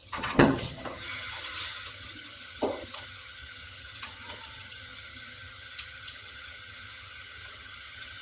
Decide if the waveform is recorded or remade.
remade